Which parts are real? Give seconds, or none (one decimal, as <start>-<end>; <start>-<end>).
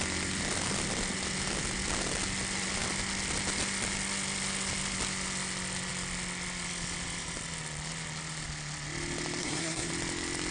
0.0-9.4; 9.9-10.5